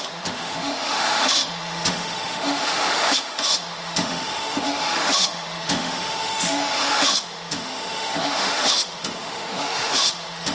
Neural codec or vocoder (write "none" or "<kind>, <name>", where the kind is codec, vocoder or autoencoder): autoencoder, DAC-VAE